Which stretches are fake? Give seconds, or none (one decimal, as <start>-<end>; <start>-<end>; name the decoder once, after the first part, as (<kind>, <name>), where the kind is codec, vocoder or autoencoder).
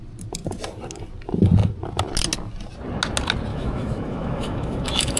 3.5-5.2 (autoencoder, DAC-VAE)